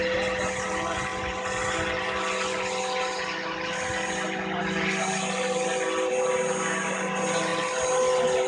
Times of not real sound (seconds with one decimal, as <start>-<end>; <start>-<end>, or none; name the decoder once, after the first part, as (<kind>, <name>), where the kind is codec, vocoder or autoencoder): none